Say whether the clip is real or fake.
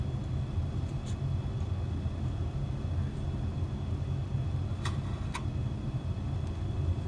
real